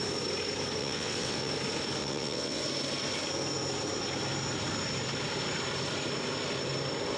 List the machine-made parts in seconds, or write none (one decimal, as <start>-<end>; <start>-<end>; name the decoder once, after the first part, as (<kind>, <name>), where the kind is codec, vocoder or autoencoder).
0.8-1.5 (vocoder, WaveNeXt); 2.0-2.6